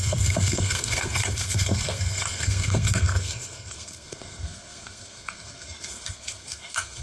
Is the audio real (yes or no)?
no